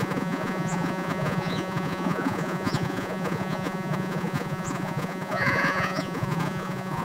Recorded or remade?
remade